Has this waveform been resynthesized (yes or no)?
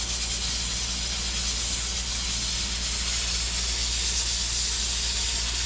no